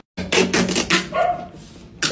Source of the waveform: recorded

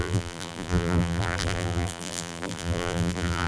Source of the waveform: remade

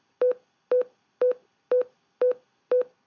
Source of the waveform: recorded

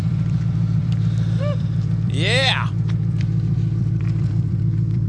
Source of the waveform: remade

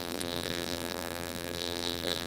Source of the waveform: remade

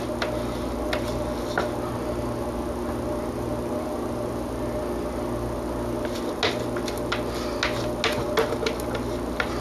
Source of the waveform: recorded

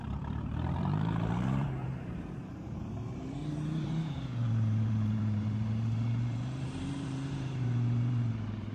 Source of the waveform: remade